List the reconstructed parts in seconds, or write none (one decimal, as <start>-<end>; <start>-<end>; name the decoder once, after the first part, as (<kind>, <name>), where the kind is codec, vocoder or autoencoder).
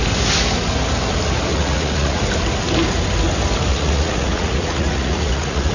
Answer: 1.5-2.2 (vocoder, Vocos); 3.7-5.7